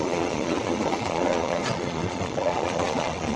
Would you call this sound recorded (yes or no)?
no